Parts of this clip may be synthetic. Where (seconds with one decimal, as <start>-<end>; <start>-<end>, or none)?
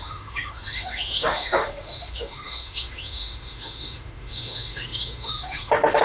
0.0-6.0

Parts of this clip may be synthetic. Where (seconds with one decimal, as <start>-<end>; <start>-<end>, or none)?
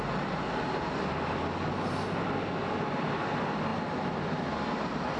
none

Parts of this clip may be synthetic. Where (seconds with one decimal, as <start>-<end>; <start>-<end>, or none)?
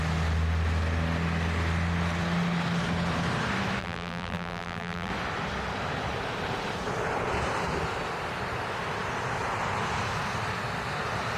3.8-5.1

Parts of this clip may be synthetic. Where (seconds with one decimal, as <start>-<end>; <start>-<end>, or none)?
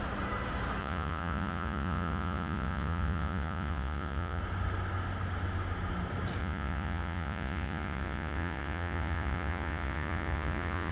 0.8-4.4; 6.4-10.9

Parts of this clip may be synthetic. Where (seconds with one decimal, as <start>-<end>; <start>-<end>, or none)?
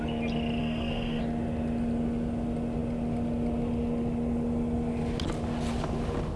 0.6-1.2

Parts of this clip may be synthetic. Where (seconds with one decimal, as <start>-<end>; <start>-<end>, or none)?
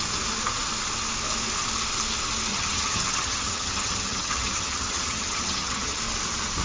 2.5-6.0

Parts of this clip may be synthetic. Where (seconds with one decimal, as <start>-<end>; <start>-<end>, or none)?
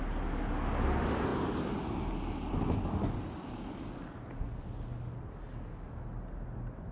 none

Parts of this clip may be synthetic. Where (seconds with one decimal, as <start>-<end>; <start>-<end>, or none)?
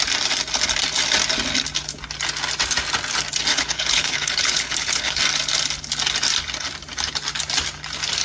3.5-5.2